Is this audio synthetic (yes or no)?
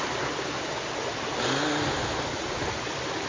no